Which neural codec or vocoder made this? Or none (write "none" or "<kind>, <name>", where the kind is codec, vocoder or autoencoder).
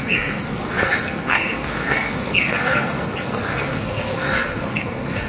codec, SNAC